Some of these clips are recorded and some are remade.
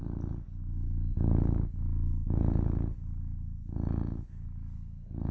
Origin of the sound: recorded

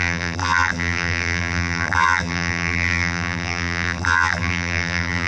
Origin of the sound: remade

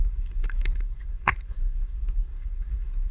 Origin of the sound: remade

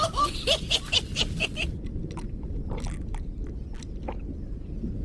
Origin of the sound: recorded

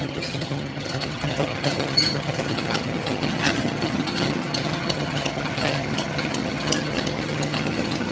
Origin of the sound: remade